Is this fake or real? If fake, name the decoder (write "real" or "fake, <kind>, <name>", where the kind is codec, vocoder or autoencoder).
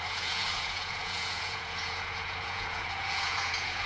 fake, vocoder, Vocos